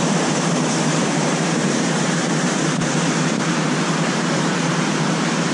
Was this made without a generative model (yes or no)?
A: no